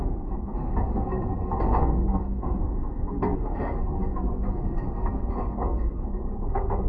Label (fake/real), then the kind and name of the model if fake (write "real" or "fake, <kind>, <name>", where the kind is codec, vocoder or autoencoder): fake, codec, SNAC